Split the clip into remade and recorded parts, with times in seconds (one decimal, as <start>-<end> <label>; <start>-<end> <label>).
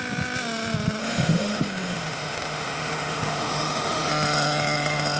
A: 0.0-1.0 recorded; 1.0-4.1 remade; 4.1-5.2 recorded